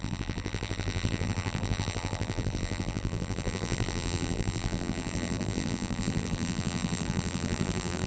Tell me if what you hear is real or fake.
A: fake